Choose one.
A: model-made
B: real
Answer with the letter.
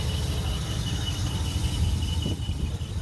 B